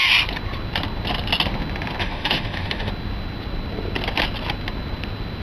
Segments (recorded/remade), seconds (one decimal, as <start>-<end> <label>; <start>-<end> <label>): 0.0-2.0 recorded; 2.0-2.9 remade; 2.9-5.4 recorded